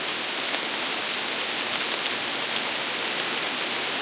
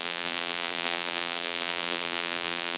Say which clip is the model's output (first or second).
second